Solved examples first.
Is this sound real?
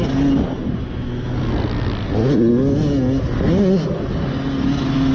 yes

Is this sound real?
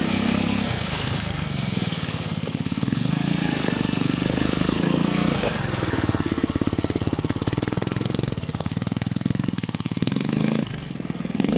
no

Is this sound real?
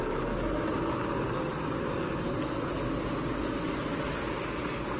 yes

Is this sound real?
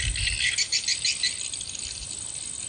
yes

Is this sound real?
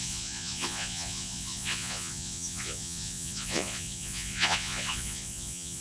no